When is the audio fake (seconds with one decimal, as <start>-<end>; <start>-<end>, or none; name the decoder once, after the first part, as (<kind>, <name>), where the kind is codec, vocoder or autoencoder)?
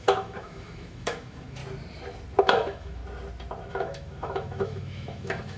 0.0-1.6 (autoencoder, DAC-VAE); 2.4-3.0; 3.7-5.6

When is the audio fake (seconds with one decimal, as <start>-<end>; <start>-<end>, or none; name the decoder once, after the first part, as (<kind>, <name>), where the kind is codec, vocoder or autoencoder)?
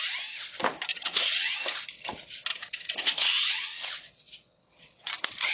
0.9-1.5 (vocoder, WaveNeXt); 2.5-5.1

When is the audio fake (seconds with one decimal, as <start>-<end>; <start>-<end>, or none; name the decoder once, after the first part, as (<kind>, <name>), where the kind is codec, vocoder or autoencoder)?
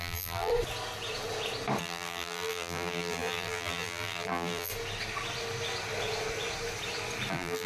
0.0-0.5 (vocoder, BigVGAN v2); 1.8-4.7; 7.3-7.7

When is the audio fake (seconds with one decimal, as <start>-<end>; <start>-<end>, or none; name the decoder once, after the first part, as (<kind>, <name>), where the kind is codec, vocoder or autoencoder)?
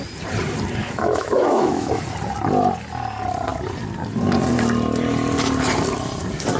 0.8-2.0 (autoencoder, DAC-VAE)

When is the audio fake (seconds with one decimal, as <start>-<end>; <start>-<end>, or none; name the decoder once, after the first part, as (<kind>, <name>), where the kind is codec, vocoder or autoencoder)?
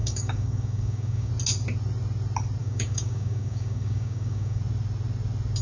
0.0-1.3 (codec, DAC); 2.6-4.6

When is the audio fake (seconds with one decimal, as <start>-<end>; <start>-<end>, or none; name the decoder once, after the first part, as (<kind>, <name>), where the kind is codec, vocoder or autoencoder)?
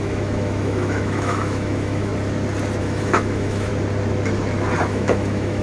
0.0-2.1 (autoencoder, DAC-VAE); 2.8-3.7; 4.8-5.6